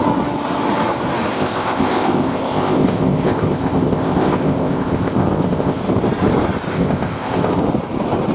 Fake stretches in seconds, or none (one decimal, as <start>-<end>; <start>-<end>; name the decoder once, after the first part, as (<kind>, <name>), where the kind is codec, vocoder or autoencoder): 1.3-5.8 (codec, ZipCodec); 6.7-7.6